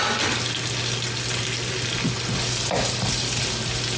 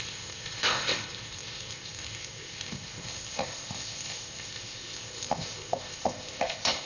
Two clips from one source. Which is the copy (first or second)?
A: second